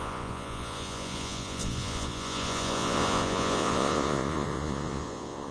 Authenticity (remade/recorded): remade